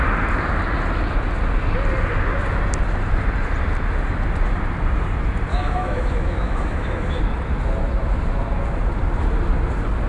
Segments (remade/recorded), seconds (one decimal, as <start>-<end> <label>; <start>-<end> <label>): 0.0-5.5 recorded; 5.5-7.2 remade; 7.2-10.1 recorded